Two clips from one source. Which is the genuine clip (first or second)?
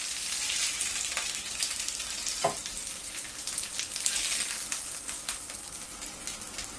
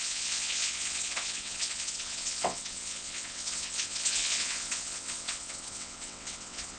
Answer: first